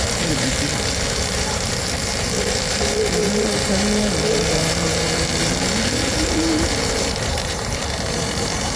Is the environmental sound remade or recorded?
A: remade